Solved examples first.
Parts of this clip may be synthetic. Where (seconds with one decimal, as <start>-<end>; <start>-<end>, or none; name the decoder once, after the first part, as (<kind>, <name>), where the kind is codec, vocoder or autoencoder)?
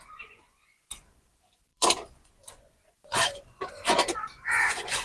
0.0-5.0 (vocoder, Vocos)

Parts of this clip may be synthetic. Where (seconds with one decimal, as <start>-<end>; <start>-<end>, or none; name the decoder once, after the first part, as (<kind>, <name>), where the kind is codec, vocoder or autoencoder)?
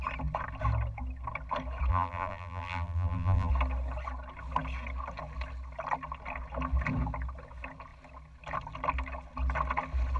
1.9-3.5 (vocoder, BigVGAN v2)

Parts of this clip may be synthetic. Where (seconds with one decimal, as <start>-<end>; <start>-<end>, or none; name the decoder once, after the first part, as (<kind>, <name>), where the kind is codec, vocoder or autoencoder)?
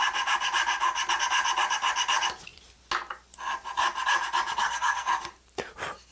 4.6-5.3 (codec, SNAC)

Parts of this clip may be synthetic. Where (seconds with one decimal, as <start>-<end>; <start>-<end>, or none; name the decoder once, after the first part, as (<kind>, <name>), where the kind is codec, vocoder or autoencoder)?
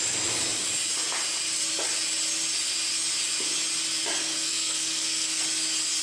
4.3-5.4 (codec, SNAC)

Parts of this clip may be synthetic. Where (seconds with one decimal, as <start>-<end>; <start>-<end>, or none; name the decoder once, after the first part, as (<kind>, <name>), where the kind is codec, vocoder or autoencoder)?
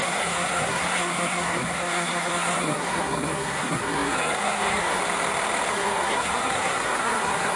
0.0-5.0 (codec, SNAC); 5.7-7.6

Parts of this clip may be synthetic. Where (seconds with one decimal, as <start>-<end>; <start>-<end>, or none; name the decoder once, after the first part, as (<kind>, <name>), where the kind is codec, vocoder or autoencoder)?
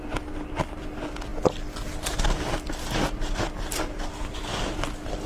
none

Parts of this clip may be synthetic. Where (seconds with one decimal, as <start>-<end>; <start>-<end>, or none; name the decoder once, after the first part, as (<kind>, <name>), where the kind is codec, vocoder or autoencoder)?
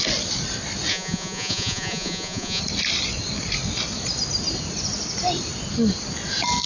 0.9-2.6 (vocoder, Vocos)